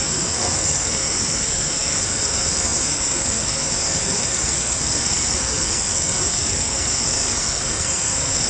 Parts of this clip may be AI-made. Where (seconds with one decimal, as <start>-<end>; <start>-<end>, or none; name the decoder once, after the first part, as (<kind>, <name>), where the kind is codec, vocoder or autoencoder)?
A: 0.0-8.5 (codec, SNAC)